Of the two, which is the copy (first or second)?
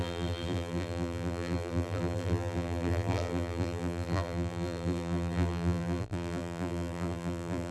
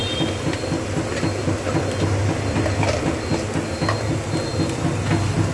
first